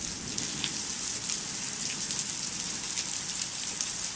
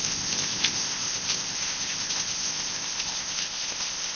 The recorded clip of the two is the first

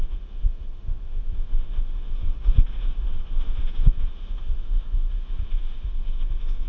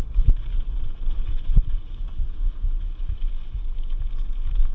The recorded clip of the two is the second